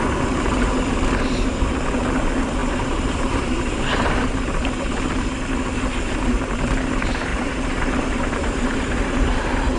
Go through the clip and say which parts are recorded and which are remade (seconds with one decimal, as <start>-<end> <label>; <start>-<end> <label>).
0.0-2.6 recorded; 2.6-4.4 remade; 4.4-7.3 recorded; 7.3-9.8 remade